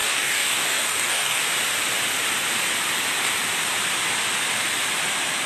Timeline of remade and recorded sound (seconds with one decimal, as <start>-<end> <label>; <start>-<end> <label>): 0.0-1.4 remade; 1.4-5.5 recorded